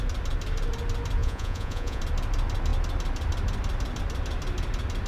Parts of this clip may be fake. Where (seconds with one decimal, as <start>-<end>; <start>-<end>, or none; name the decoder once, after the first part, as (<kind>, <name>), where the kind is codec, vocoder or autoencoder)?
1.2-2.0 (vocoder, Vocos)